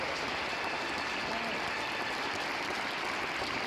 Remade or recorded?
recorded